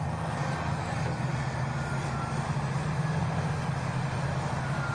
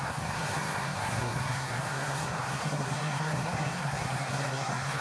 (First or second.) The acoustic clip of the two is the first